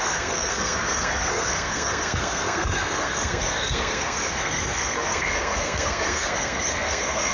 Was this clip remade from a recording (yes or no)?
yes